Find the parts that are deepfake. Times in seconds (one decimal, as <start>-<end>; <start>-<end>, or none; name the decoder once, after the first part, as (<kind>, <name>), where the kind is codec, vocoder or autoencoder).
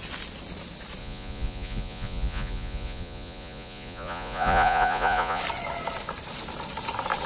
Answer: 1.0-5.4 (vocoder, Vocos)